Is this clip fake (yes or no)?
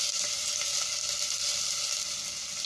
no